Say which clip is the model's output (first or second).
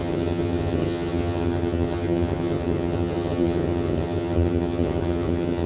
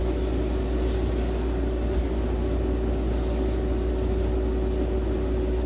first